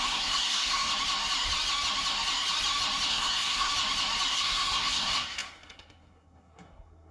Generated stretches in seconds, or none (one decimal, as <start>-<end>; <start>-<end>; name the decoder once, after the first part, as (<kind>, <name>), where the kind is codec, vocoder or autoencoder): 0.0-0.9 (codec, SNAC); 3.1-3.7; 4.3-7.1